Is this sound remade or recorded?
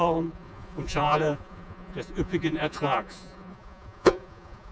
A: remade